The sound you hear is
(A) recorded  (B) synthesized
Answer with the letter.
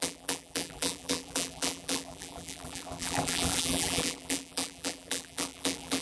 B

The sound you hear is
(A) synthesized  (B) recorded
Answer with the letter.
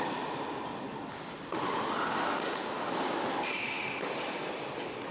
B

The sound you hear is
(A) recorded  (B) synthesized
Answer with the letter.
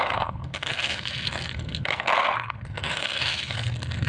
B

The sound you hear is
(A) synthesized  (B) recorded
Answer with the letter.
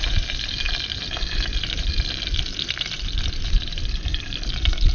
B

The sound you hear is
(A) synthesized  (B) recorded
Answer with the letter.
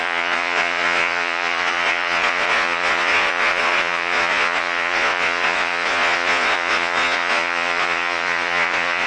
A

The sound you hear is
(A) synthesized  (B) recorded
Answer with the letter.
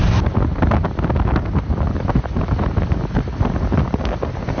B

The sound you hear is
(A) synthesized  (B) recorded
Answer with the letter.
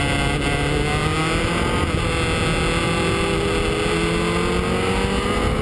B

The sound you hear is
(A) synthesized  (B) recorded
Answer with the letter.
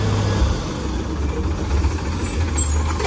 B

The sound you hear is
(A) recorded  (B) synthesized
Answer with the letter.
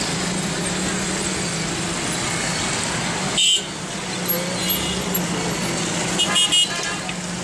A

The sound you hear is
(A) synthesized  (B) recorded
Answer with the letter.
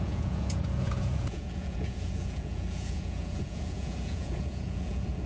A